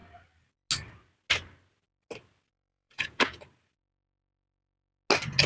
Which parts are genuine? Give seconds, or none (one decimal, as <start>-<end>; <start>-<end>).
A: 0.0-2.7; 3.4-5.5